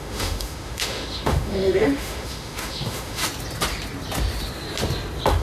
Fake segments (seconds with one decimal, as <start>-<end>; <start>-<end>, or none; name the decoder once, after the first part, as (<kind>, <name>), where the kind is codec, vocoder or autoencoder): 0.0-3.2 (autoencoder, DAC-VAE)